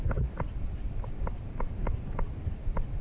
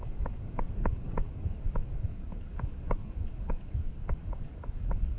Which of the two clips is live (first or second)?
first